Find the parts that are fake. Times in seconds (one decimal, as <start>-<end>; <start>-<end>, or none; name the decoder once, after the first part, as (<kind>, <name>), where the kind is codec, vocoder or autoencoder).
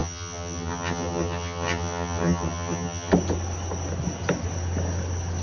0.0-3.1 (vocoder, HiFi-GAN)